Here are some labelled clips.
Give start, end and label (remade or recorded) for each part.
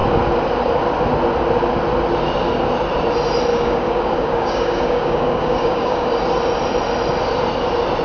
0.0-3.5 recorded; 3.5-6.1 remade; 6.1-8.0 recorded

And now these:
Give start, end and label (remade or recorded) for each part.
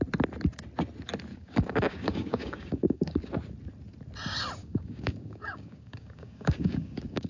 0.0-1.3 recorded; 1.3-3.3 remade; 3.3-4.6 recorded; 4.6-7.3 remade